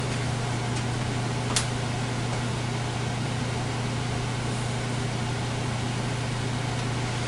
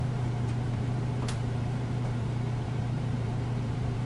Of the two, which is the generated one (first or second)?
second